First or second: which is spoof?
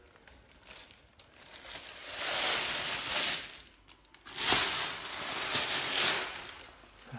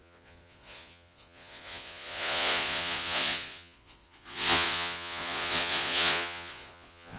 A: second